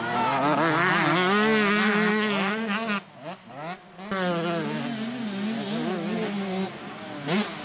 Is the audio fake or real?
real